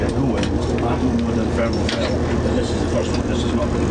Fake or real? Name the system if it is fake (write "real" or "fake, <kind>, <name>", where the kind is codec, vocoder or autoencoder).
real